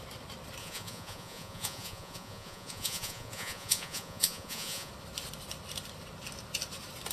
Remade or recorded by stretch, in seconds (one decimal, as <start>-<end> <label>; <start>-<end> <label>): 0.0-0.6 recorded; 0.6-4.9 remade; 4.9-7.1 recorded